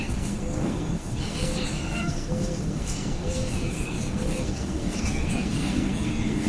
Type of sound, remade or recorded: remade